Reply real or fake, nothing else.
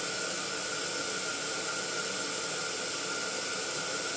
real